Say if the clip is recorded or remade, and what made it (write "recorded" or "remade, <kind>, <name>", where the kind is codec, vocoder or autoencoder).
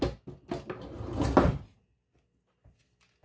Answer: recorded